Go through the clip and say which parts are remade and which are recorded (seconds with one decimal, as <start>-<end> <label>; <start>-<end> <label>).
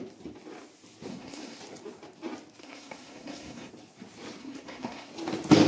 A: 0.0-1.1 recorded; 1.1-1.6 remade; 1.6-2.6 recorded; 2.6-3.7 remade; 3.7-4.4 recorded; 4.4-5.1 remade; 5.1-5.7 recorded